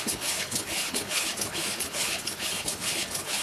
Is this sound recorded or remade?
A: remade